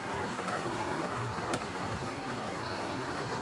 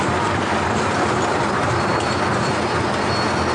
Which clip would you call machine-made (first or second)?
first